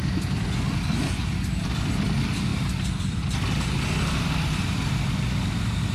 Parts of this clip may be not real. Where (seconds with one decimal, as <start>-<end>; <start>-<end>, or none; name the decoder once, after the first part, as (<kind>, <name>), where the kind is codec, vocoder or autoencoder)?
none